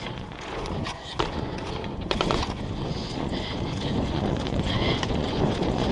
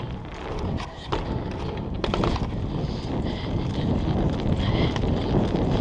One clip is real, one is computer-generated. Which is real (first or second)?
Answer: second